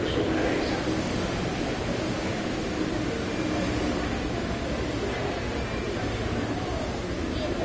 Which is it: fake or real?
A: real